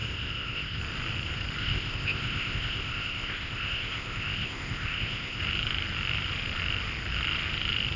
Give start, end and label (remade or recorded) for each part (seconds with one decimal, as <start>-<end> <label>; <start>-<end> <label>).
0.0-0.8 remade; 0.8-1.6 recorded; 1.6-5.4 remade; 5.4-8.0 recorded